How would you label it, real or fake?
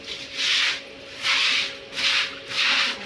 real